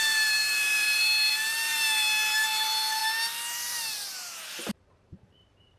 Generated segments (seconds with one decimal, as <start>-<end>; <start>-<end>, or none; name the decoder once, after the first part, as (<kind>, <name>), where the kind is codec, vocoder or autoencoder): 0.0-3.0 (vocoder, BigVGAN v2); 4.5-5.8